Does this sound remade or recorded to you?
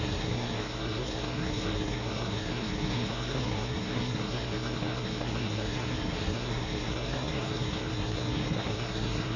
remade